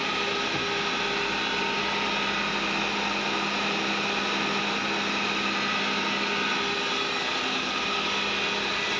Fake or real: real